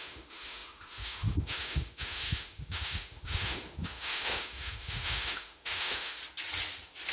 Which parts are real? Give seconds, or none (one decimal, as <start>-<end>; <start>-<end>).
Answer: 6.2-7.1

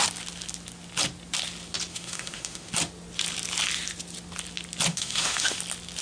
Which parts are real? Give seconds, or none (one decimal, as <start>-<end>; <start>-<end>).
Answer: 0.0-1.9; 2.7-4.9; 5.6-6.0

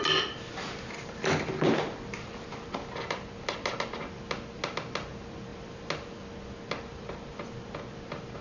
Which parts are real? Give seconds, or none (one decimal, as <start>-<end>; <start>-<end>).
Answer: 0.0-8.4

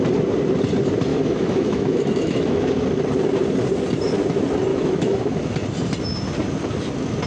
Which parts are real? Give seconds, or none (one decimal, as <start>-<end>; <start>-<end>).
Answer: 0.0-1.1; 2.7-4.7; 5.4-7.3

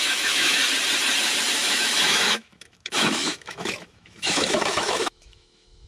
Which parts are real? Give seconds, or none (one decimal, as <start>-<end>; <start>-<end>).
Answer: 0.6-1.5

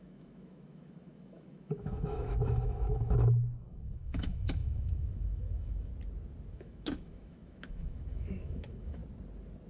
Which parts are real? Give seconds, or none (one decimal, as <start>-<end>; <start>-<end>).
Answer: 5.9-6.5; 9.0-9.7

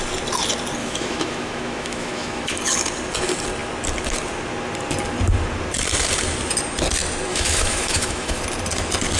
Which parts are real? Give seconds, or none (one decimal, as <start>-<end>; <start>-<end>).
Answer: 0.0-0.8; 2.6-7.3; 8.4-9.2